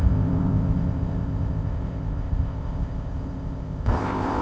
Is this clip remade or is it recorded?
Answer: remade